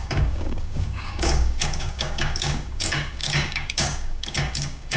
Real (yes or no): no